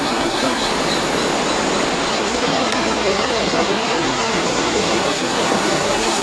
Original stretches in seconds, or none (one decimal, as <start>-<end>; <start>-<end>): 0.7-2.1